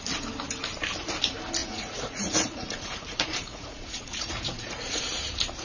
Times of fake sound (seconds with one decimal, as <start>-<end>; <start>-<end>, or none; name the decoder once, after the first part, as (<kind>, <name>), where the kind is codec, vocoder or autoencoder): 1.6-5.0 (vocoder, Vocos)